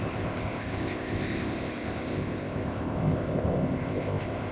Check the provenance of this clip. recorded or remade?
remade